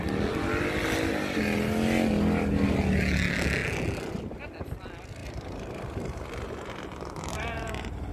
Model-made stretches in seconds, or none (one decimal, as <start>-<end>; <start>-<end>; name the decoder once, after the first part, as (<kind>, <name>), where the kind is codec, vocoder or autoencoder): 5.2-8.1 (vocoder, BigVGAN v2)